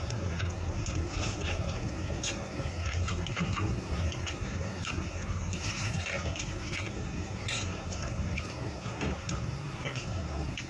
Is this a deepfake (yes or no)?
yes